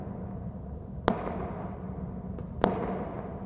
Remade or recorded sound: recorded